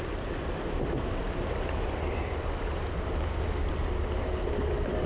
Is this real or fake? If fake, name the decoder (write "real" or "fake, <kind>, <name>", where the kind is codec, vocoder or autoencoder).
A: real